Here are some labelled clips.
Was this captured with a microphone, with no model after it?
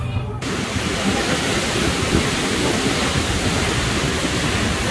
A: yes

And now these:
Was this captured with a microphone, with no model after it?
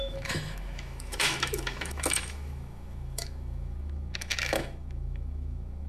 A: no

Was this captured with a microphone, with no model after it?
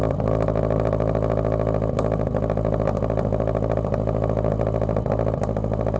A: yes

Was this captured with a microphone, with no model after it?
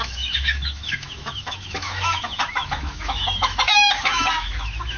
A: no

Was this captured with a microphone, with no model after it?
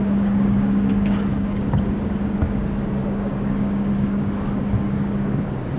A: no